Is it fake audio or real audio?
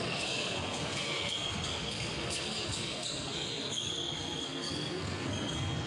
fake